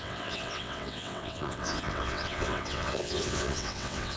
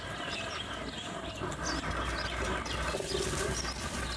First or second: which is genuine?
second